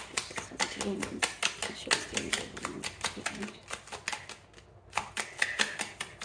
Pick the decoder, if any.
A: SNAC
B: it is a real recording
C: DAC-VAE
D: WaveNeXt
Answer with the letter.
B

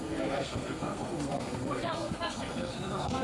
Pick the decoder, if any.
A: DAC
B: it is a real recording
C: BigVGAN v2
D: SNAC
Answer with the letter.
D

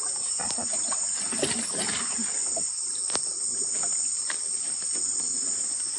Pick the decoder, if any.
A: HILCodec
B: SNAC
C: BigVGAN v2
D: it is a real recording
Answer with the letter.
D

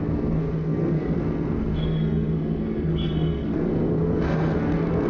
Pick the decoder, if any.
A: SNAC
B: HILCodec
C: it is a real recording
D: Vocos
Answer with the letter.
A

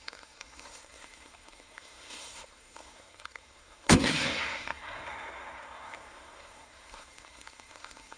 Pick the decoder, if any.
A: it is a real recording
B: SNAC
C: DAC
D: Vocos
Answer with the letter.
B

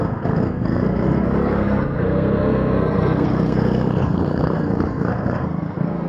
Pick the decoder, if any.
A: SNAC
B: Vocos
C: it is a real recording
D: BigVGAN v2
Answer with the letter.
A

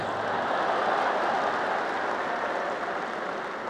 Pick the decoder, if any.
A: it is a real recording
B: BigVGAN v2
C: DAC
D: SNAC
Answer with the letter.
A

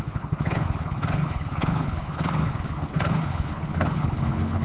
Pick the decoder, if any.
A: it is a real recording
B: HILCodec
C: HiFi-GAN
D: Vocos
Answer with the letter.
B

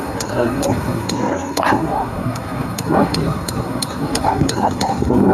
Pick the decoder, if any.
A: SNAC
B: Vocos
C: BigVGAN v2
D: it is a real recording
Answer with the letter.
A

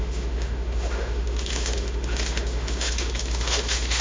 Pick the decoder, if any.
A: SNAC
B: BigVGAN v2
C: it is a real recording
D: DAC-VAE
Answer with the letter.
D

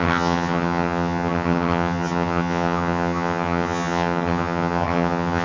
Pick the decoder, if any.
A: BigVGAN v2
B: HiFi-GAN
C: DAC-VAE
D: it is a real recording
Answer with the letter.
B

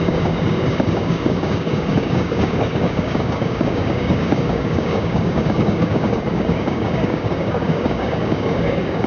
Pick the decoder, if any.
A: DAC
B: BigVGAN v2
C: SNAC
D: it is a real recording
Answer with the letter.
A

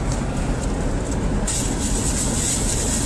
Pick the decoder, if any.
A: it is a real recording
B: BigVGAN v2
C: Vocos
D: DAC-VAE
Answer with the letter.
A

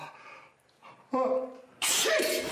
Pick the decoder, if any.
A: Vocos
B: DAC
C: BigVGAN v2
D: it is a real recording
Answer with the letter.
C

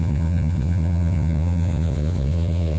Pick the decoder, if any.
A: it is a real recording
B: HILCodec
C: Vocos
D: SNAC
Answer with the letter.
C